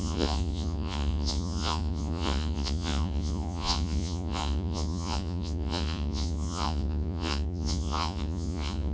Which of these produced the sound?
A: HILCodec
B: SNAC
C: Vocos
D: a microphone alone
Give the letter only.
C